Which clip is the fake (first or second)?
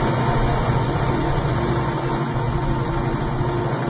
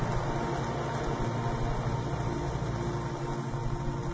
first